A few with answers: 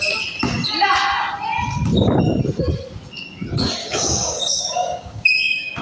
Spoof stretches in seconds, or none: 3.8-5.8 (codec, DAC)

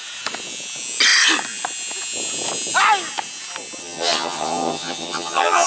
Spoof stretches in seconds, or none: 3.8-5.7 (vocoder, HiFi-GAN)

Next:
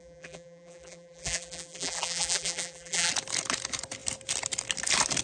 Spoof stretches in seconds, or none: 0.0-3.1 (vocoder, BigVGAN v2)

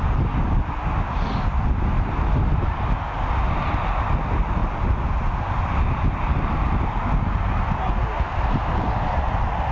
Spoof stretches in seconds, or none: none